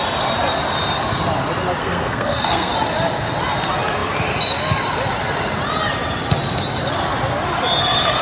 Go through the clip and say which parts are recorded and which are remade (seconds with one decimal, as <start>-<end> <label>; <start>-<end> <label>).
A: 0.0-1.8 recorded; 1.8-2.7 remade; 2.7-8.2 recorded

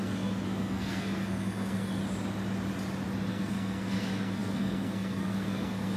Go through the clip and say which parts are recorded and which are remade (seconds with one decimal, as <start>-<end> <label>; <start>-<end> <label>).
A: 0.0-2.0 remade; 2.0-3.3 recorded; 3.3-6.0 remade

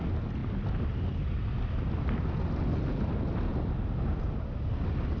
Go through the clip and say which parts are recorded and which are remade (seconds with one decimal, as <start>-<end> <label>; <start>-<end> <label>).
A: 0.0-5.2 recorded

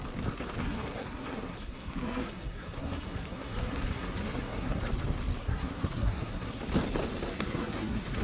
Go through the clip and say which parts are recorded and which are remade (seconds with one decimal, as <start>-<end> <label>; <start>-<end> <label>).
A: 0.0-0.6 recorded; 0.6-4.8 remade; 4.8-5.4 recorded; 5.4-6.6 remade; 6.6-7.3 recorded; 7.3-8.2 remade

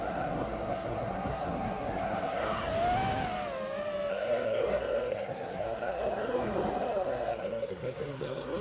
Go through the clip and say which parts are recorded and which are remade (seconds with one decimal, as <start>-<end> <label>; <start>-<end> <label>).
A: 0.0-2.7 remade; 2.7-4.1 recorded; 4.1-8.6 remade

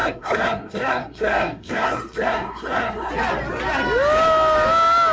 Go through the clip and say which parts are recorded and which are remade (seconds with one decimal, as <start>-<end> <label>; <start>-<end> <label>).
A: 0.0-3.1 remade; 3.1-5.1 recorded

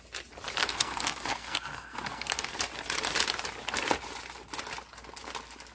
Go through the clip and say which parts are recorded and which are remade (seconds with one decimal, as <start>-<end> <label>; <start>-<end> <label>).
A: 0.0-0.6 recorded; 0.6-2.6 remade; 2.6-5.7 recorded

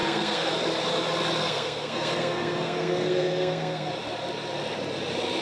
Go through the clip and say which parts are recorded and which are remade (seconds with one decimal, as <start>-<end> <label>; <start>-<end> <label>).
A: 0.0-0.5 remade; 0.5-1.4 recorded; 1.4-3.9 remade; 3.9-5.4 recorded